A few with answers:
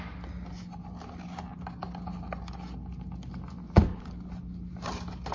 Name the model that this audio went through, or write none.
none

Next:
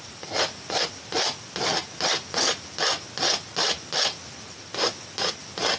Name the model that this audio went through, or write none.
none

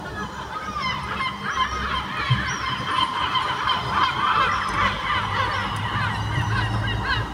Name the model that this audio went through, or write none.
none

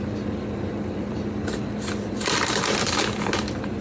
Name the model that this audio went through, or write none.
none